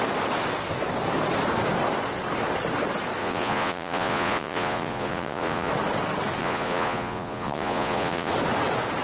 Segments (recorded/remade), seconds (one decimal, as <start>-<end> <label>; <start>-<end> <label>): 0.0-3.2 recorded; 3.2-5.7 remade; 5.7-6.4 recorded; 6.4-8.3 remade; 8.3-9.0 recorded